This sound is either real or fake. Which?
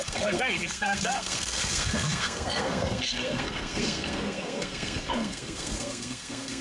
fake